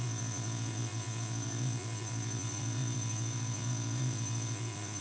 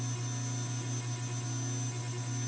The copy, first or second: first